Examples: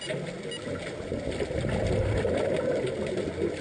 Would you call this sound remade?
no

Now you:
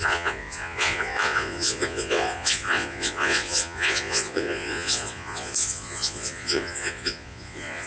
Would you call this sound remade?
yes